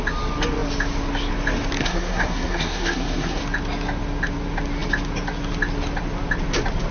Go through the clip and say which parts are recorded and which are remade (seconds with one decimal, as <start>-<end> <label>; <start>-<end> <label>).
0.0-1.8 recorded; 1.8-3.4 remade; 3.4-6.9 recorded